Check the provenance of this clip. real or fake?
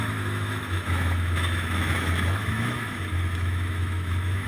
fake